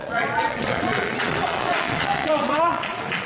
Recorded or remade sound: remade